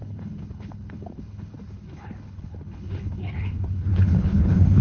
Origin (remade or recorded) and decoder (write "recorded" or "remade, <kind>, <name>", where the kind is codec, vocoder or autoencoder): remade, codec, HILCodec